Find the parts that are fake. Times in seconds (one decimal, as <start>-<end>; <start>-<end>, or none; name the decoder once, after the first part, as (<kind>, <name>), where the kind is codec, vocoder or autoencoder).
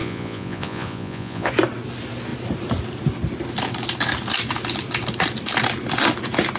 0.0-1.5 (vocoder, Vocos)